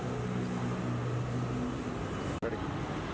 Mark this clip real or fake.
real